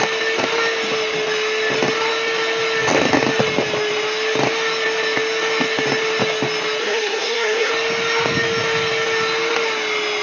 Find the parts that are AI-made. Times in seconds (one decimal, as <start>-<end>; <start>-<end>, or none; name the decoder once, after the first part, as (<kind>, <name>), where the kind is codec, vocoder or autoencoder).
6.8-7.7 (codec, SNAC)